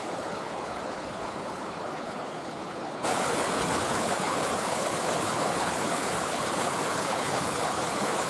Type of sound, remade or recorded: remade